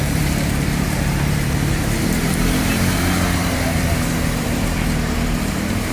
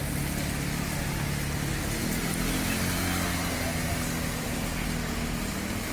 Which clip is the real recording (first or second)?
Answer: second